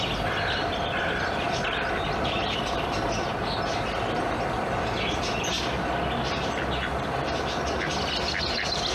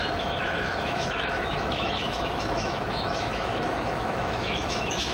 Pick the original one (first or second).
first